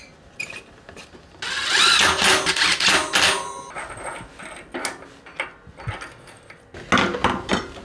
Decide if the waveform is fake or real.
real